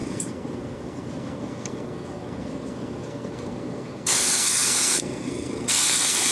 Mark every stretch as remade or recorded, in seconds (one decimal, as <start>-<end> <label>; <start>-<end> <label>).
0.0-6.3 remade